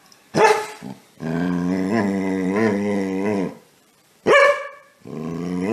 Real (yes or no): no